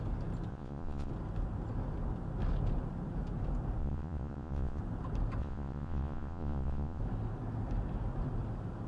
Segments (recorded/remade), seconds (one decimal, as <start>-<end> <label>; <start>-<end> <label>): 0.0-0.5 recorded; 0.5-1.1 remade; 1.1-3.8 recorded; 3.8-4.8 remade; 4.8-5.4 recorded; 5.4-7.0 remade; 7.0-8.9 recorded